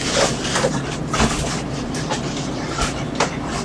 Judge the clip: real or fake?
real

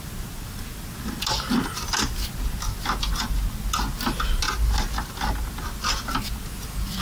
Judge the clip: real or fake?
real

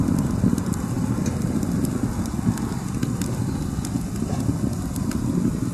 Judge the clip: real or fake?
real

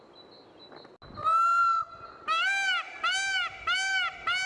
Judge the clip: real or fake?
real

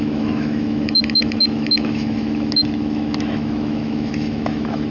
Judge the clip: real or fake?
fake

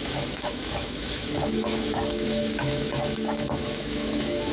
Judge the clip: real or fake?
fake